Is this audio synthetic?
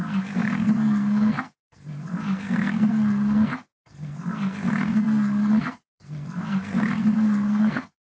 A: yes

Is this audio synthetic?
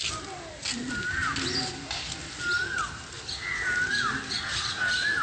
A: no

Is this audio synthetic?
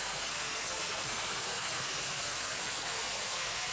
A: yes